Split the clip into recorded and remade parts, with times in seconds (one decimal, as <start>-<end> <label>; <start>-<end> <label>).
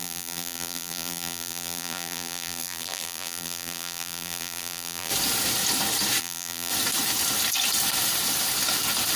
0.0-5.1 remade; 5.1-6.2 recorded; 6.2-6.7 remade; 6.7-9.2 recorded